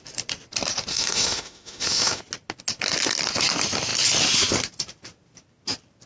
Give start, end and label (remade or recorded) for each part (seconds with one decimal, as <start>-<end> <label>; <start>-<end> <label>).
0.0-0.9 recorded; 0.9-2.2 remade; 2.2-6.1 recorded